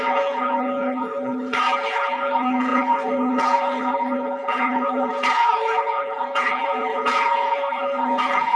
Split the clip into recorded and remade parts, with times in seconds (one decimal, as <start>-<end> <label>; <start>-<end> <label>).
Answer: 0.0-8.6 remade